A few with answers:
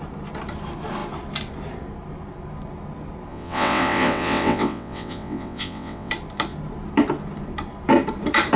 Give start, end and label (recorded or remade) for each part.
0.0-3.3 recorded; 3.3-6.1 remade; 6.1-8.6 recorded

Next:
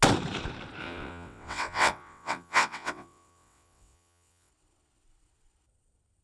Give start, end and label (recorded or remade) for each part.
0.0-0.8 recorded; 0.8-4.5 remade; 4.5-6.2 recorded

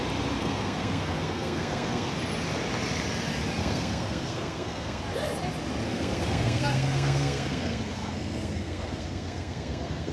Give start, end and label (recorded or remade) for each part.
0.0-0.4 recorded; 0.4-2.1 remade; 2.1-3.6 recorded; 3.6-5.0 remade; 5.0-5.8 recorded; 5.8-10.1 remade